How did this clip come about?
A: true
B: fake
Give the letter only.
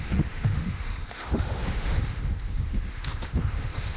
B